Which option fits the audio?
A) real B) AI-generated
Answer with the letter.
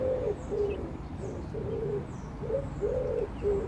A